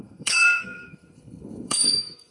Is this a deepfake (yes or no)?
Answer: yes